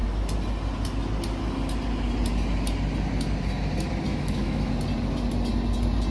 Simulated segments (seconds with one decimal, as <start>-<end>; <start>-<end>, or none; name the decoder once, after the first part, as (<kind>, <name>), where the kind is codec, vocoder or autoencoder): 4.1-4.7 (autoencoder, DAC-VAE)